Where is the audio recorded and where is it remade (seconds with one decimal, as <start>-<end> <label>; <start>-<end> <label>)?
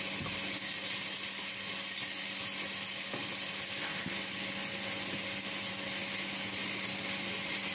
0.0-7.7 recorded